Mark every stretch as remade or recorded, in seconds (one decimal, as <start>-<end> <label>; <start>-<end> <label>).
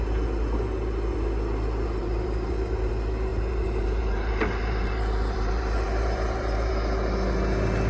0.0-2.0 recorded; 2.0-2.9 remade; 2.9-3.3 recorded; 3.3-6.7 remade; 6.7-7.9 recorded